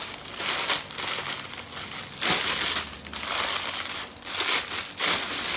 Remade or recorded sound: recorded